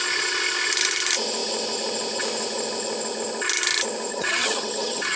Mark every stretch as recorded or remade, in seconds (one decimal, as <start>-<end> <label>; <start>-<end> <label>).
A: 0.0-4.1 recorded; 4.1-5.2 remade